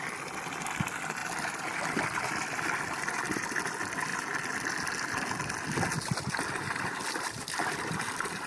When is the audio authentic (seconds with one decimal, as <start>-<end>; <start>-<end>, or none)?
4.1-6.2